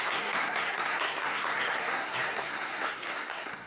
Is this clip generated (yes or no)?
yes